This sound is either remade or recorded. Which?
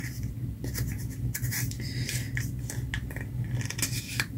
recorded